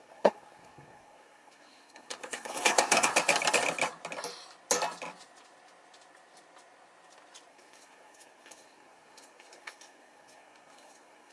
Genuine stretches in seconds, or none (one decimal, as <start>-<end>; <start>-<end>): 3.1-7.5